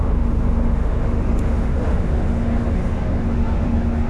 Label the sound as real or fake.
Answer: fake